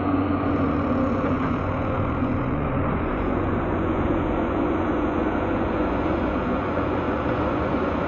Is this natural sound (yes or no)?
no